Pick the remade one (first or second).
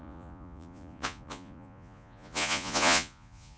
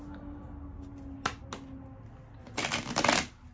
first